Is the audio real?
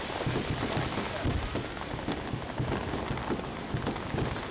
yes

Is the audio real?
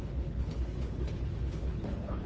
no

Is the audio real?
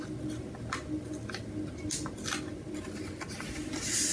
yes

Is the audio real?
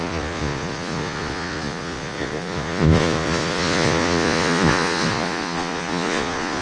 no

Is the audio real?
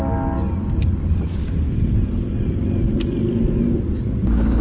yes